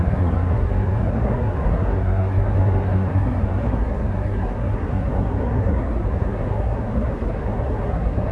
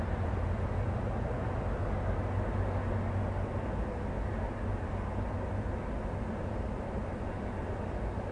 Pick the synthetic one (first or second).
first